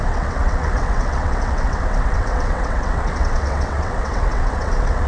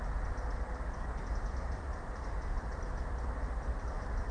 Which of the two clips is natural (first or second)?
second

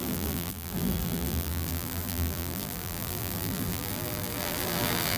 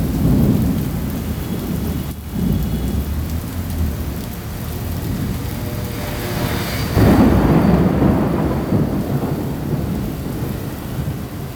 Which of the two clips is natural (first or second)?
second